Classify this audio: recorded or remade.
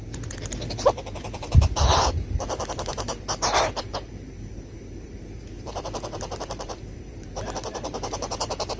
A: remade